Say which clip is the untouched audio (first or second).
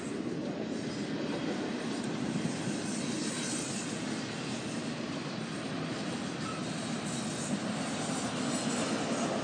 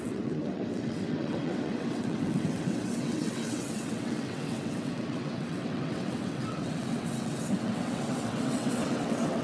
first